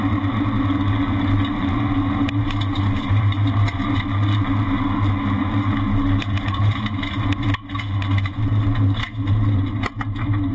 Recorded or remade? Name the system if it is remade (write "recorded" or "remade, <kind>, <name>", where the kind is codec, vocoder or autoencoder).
remade, vocoder, BigVGAN v2